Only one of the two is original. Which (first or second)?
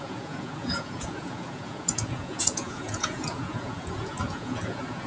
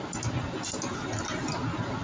second